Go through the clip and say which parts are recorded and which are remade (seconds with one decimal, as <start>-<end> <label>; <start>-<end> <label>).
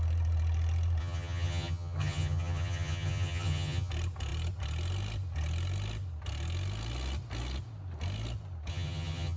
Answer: 0.0-1.0 recorded; 1.0-3.9 remade; 3.9-8.7 recorded; 8.7-9.4 remade